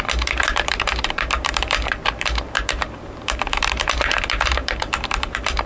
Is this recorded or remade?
remade